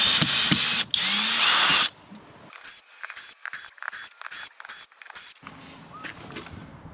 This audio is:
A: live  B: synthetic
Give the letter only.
A